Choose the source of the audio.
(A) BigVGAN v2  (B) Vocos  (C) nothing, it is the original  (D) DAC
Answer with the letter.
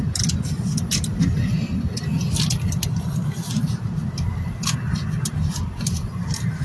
C